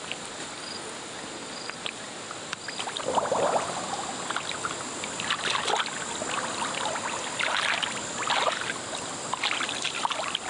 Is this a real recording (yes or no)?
yes